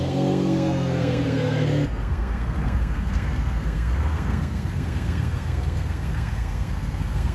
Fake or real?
fake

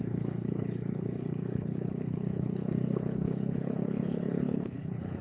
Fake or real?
fake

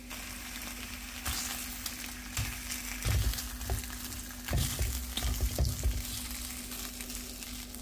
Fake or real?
real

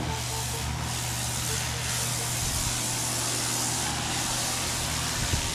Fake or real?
real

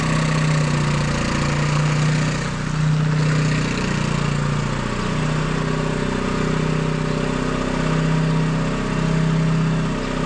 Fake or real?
real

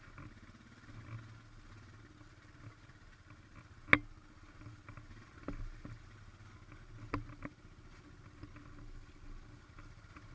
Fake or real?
real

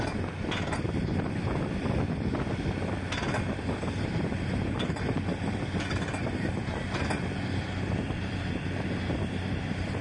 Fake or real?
real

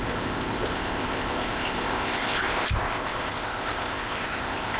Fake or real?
fake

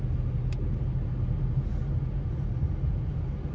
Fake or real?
real